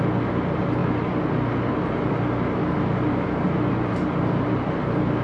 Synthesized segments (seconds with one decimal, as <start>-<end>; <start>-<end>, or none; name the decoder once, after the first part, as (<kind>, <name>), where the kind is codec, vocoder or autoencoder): none